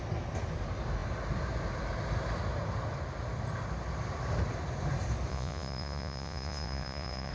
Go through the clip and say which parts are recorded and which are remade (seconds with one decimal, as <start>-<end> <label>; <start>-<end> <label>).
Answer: 0.0-5.3 recorded; 5.3-7.3 remade